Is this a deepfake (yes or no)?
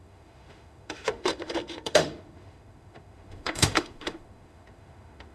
yes